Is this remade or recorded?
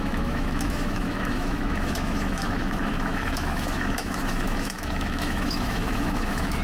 remade